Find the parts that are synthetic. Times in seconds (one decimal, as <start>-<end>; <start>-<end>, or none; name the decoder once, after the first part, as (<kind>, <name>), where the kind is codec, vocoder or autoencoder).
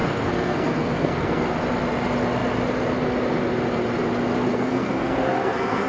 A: 0.0-1.4 (codec, SNAC); 4.5-5.9